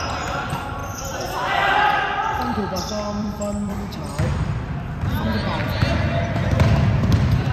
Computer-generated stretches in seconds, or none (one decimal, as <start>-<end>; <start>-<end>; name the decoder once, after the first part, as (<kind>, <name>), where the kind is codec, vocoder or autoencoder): 0.8-2.4 (vocoder, BigVGAN v2); 3.2-4.1; 5.6-6.3